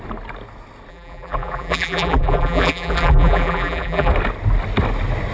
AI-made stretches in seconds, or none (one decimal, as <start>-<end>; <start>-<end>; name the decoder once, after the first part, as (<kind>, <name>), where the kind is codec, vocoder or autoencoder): 0.9-4.1 (vocoder, BigVGAN v2)